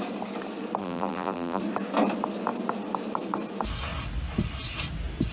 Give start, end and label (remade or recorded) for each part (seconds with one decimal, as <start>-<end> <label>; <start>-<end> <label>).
0.0-0.8 recorded; 0.8-1.6 remade; 1.6-5.3 recorded